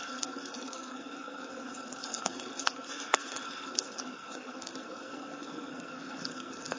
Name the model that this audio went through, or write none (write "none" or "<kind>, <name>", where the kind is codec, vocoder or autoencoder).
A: codec, SNAC